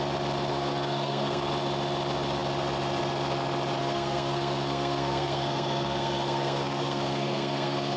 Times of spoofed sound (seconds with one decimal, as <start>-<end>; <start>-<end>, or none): 0.5-1.5; 3.8-8.0